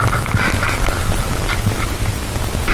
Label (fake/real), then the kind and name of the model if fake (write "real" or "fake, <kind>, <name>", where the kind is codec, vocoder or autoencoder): real